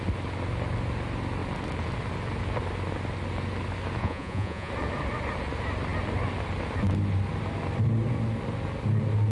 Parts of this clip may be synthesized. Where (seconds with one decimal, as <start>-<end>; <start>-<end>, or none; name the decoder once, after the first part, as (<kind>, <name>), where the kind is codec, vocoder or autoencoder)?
4.0-4.7 (vocoder, Vocos)